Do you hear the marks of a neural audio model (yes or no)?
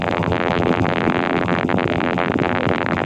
yes